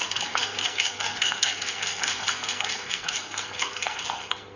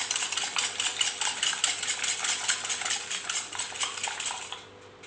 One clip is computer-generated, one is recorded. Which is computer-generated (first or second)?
first